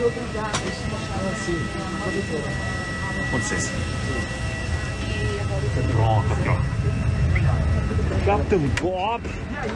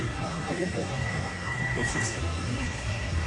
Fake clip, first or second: second